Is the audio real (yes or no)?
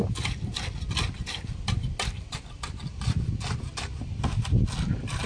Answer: yes